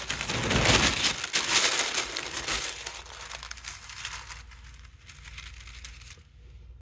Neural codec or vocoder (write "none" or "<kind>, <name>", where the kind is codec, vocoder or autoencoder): none